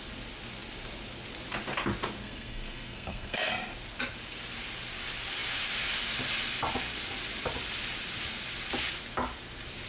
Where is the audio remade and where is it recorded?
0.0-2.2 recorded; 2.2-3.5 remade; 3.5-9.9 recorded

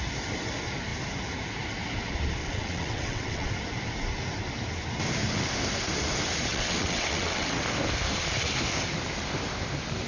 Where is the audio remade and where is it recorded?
0.0-2.4 recorded; 2.4-3.5 remade; 3.5-6.5 recorded; 6.5-7.6 remade; 7.6-10.1 recorded